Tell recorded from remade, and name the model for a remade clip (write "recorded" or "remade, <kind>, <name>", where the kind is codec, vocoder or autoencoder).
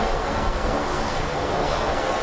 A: remade, codec, SNAC